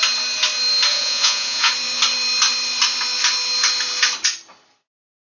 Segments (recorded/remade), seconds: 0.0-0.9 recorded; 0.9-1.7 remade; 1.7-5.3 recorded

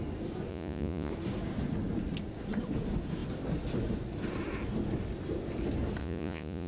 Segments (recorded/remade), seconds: 0.0-0.5 recorded; 0.5-1.1 remade; 1.1-6.0 recorded; 6.0-6.7 remade

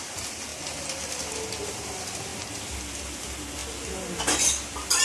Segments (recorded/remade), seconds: 0.0-5.0 recorded

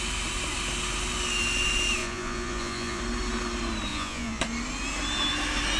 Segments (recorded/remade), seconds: 0.0-2.0 recorded; 2.0-3.0 remade; 3.0-3.9 recorded; 3.9-4.4 remade; 4.4-5.8 recorded

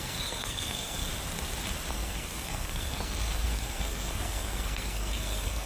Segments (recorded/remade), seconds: 0.0-1.1 remade; 1.1-1.9 recorded; 1.9-5.7 remade

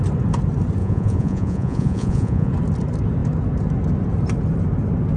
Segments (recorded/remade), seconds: 0.0-0.8 recorded; 0.8-2.5 remade; 2.5-5.2 recorded

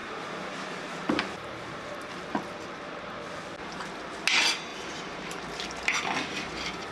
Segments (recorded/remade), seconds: 0.0-3.8 remade; 3.8-4.7 recorded; 4.7-5.4 remade; 5.4-6.9 recorded